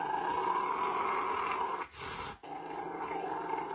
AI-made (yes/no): no